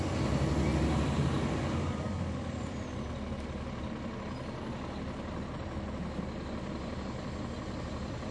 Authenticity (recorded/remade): recorded